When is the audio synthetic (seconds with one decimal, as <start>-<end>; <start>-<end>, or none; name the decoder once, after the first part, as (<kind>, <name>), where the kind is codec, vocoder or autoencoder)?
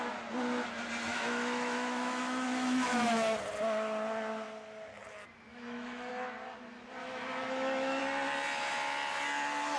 1.1-3.4 (autoencoder, DAC-VAE); 5.5-6.1; 7.0-8.0